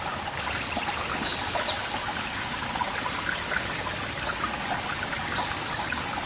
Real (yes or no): yes